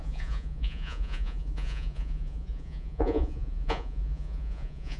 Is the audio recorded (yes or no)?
no